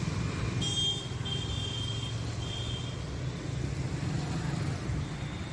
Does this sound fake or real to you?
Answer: real